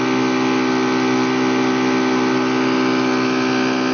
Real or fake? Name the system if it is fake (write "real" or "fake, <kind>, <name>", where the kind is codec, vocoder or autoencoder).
real